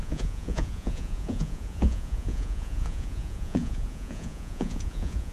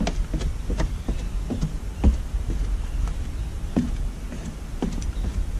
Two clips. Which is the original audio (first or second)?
second